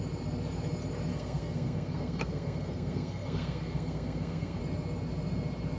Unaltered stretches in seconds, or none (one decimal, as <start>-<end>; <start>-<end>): 0.0-1.1; 4.6-5.8